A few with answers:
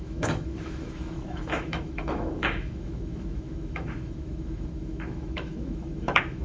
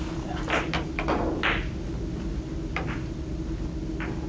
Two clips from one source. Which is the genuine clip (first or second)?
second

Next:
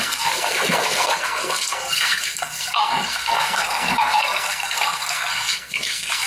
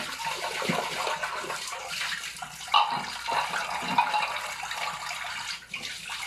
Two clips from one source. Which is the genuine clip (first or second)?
second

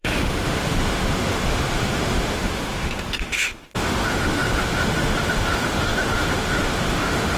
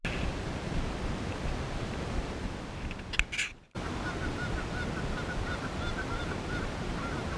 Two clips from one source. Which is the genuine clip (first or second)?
second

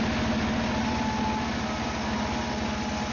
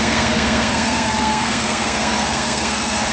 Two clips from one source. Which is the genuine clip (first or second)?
first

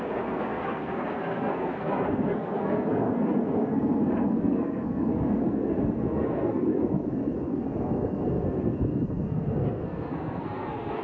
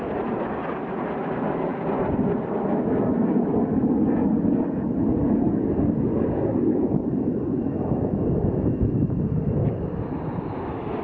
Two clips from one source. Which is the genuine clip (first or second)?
second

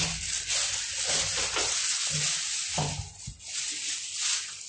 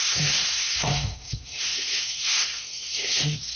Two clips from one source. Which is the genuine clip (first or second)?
first